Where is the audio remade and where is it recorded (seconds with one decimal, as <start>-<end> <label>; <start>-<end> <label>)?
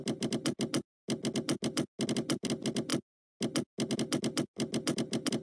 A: 0.0-5.4 recorded